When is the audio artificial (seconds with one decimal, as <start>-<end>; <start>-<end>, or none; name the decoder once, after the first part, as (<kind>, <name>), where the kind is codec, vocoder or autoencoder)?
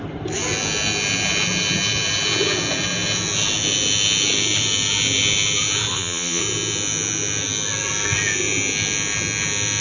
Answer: 5.9-6.4 (vocoder, Vocos)